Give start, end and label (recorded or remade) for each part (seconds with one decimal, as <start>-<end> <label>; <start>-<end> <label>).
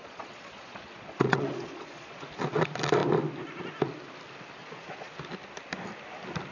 0.0-2.2 remade; 2.2-4.6 recorded; 4.6-5.1 remade; 5.1-6.5 recorded